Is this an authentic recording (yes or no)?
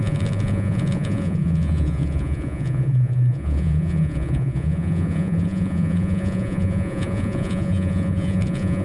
no